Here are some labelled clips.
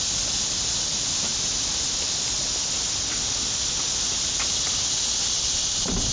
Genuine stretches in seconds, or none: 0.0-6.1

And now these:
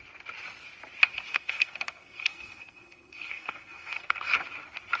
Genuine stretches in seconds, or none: 0.0-1.3; 4.3-5.0

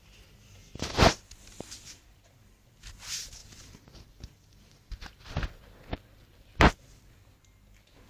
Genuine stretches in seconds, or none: 0.0-0.6; 2.5-3.4; 7.3-8.1

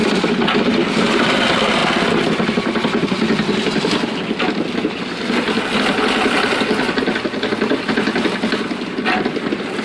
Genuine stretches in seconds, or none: 0.0-9.8

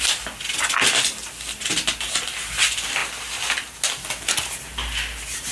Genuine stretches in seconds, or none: 0.0-5.5

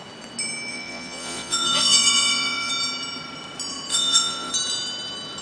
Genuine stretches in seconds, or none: 0.0-0.7; 2.7-3.9; 4.5-5.4

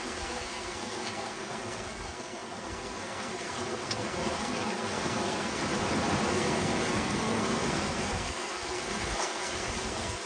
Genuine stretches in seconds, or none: 5.6-6.3

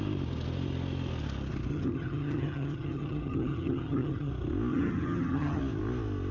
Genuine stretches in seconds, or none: 0.0-1.7; 4.3-4.7; 5.6-6.3